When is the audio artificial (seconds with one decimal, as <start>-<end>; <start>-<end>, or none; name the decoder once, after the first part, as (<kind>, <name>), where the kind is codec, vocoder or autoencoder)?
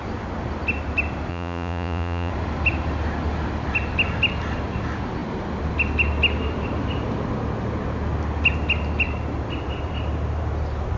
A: 1.3-2.3 (vocoder, Vocos)